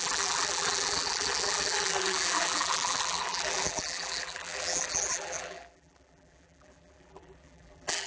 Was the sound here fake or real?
fake